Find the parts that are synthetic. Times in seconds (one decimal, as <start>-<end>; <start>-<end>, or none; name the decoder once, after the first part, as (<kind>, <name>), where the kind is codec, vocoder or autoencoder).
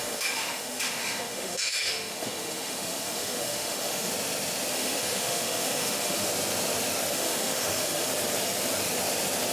0.0-4.1 (autoencoder, DAC-VAE); 4.7-6.3; 7.1-8.1